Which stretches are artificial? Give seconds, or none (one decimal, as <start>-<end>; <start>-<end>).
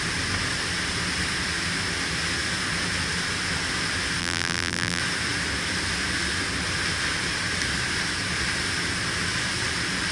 4.2-5.0